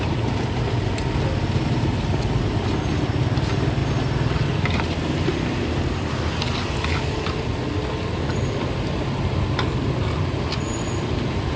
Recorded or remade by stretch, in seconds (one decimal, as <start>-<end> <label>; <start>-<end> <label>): 0.0-11.6 recorded